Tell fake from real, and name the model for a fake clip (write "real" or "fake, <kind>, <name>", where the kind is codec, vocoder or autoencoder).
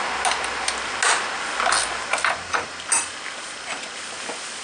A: real